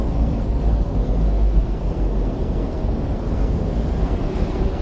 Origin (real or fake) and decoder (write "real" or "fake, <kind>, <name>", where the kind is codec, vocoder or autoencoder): fake, codec, SNAC